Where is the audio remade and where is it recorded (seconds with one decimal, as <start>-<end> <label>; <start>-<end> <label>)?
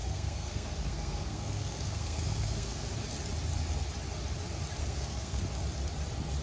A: 0.0-2.9 remade; 2.9-4.8 recorded; 4.8-5.4 remade; 5.4-6.4 recorded